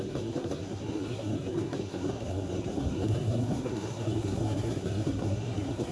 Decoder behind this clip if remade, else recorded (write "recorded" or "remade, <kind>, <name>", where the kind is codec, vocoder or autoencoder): remade, codec, SNAC